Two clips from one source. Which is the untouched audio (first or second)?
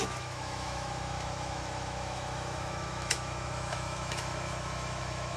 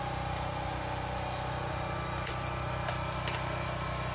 second